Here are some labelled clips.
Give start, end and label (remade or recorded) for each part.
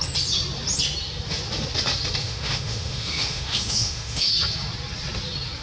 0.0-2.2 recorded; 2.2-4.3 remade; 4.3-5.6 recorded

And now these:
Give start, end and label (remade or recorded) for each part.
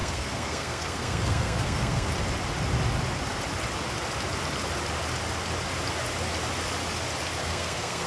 0.0-2.1 remade; 2.1-7.4 recorded; 7.4-8.1 remade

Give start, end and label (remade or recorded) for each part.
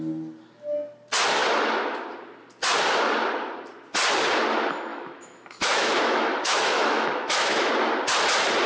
0.0-4.9 recorded; 4.9-7.7 remade; 7.7-8.7 recorded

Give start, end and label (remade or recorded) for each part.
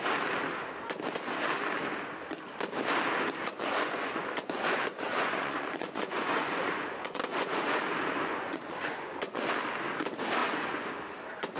0.0-3.4 recorded; 3.4-7.8 remade; 7.8-8.3 recorded; 8.3-9.5 remade; 9.5-10.4 recorded; 10.4-10.9 remade; 10.9-11.6 recorded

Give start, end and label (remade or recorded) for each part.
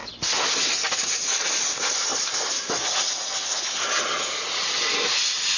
0.0-5.6 recorded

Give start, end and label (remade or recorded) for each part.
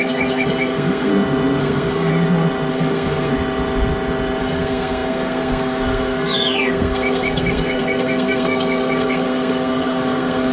0.0-1.1 remade; 1.1-1.6 recorded; 1.6-2.1 remade; 2.1-2.7 recorded; 2.7-3.3 remade; 3.3-4.4 recorded; 4.4-10.5 remade